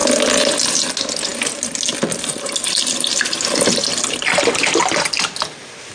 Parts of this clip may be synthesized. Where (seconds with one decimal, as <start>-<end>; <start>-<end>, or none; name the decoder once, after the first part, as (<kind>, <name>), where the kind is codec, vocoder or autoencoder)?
none